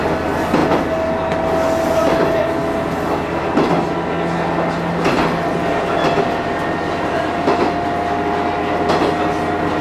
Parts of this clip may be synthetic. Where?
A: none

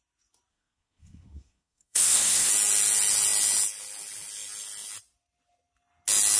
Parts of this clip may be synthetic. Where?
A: 0.5-2.5 (codec, SNAC)

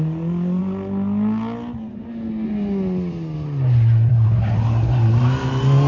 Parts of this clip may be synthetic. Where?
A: none

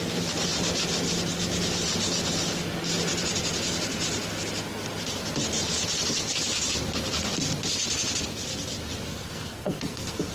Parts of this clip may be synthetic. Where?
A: 9.1-10.3 (codec, SNAC)

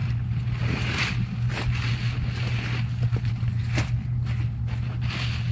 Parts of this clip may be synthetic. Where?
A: none

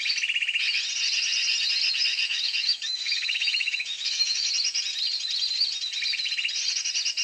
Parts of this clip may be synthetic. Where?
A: 2.1-4.5 (autoencoder, DAC-VAE)

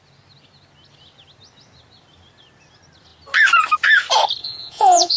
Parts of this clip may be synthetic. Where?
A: 4.4-5.2 (vocoder, Vocos)

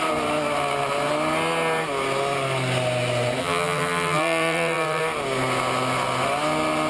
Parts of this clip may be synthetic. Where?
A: 3.4-5.0 (vocoder, BigVGAN v2)